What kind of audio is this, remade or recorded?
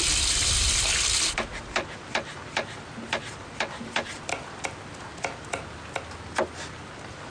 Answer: recorded